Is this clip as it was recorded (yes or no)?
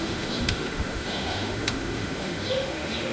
no